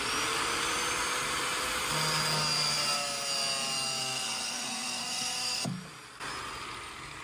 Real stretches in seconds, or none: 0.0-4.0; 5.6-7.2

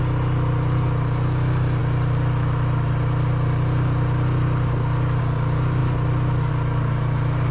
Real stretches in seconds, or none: 0.0-7.5

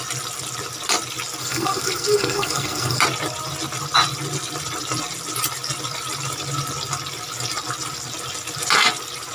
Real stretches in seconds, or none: 0.0-1.4; 3.0-9.3

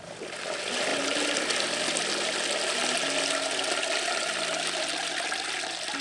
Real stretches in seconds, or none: 0.0-6.0

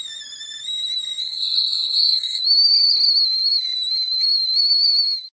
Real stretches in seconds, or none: 0.0-1.2; 2.4-5.3

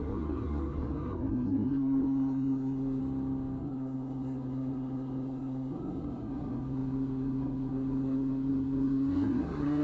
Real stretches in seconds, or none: 3.0-3.6

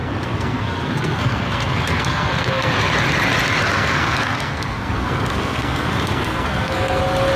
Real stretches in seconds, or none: 2.7-3.7; 7.0-7.4